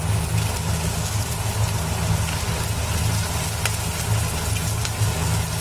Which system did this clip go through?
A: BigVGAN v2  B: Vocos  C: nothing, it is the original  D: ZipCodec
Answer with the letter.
C